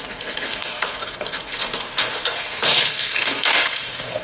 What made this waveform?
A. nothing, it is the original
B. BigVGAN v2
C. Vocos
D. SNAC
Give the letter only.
D